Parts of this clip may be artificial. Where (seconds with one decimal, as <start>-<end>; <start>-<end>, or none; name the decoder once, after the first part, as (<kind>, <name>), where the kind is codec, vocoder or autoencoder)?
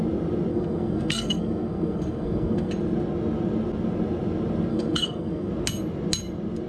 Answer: 0.5-2.7 (codec, SNAC); 4.7-5.5